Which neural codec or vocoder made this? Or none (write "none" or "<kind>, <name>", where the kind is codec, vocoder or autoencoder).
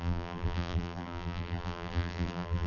vocoder, BigVGAN v2